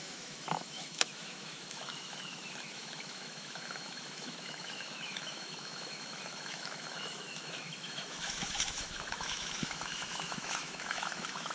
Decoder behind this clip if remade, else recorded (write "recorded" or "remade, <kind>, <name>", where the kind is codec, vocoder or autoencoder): remade, autoencoder, DAC-VAE